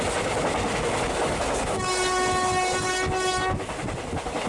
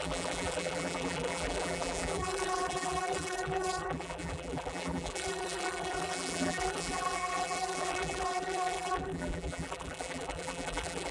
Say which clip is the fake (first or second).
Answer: second